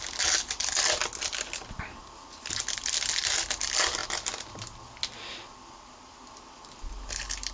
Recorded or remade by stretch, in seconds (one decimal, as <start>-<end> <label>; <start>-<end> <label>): 0.0-7.5 recorded